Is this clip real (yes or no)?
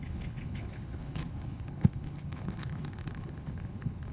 no